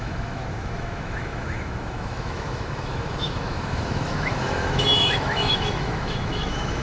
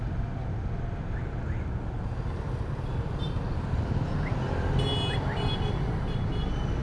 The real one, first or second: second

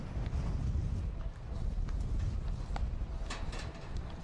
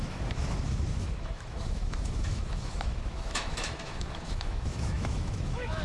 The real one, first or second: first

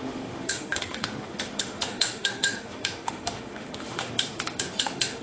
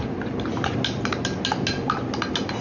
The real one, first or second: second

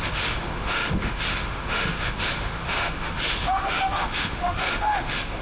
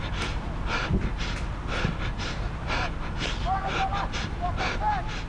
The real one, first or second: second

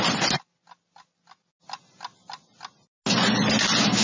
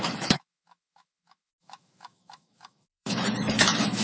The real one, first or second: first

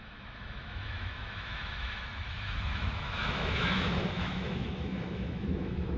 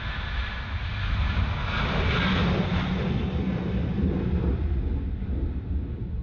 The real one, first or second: second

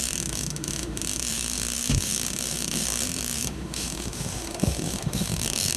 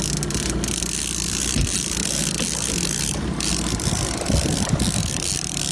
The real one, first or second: second